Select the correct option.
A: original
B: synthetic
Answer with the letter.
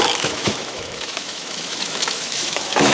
B